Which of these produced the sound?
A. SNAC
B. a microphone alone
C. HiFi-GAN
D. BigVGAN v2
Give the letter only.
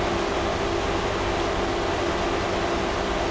B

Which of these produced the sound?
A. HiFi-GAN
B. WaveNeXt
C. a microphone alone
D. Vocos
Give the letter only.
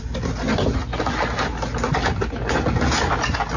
C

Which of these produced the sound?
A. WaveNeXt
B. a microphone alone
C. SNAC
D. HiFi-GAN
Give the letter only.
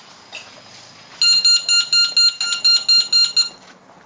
B